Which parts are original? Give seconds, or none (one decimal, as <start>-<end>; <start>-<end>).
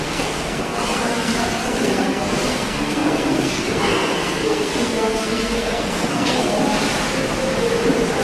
6.6-8.2